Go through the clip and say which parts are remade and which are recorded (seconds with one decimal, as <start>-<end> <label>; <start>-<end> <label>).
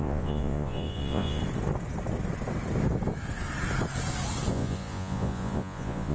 0.0-1.4 remade; 1.4-4.5 recorded; 4.5-6.1 remade